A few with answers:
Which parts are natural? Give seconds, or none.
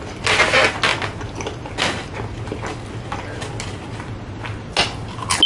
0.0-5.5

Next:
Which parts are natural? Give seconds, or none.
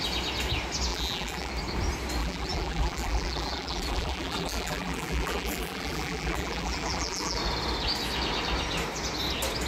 0.0-0.9; 1.5-2.2; 7.4-9.7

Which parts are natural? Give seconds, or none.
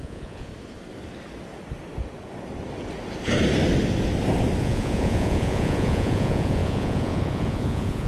0.5-4.6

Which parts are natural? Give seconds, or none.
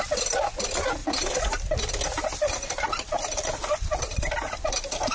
0.0-5.1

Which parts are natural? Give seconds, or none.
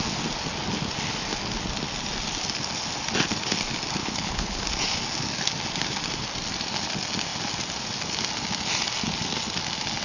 0.0-4.0; 4.6-10.0